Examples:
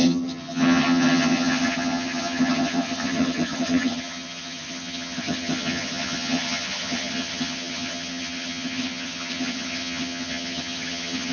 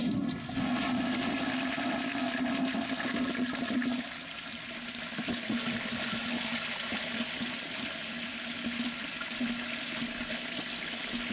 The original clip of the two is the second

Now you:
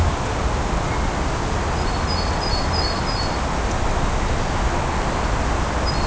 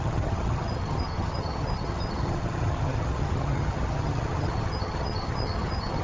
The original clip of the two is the first